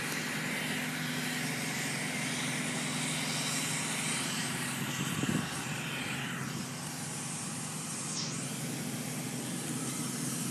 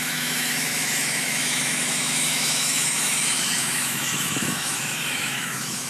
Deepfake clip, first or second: second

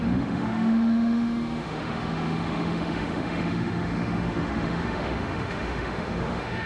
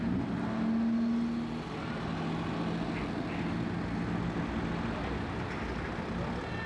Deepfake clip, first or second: first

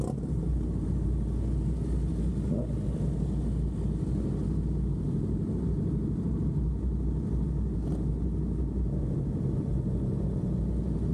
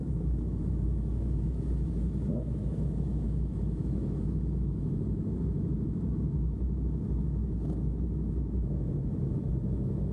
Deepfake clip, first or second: second